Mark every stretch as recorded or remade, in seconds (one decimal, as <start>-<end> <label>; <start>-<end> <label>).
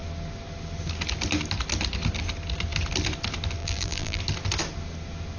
0.0-3.6 recorded; 3.6-4.2 remade; 4.2-5.4 recorded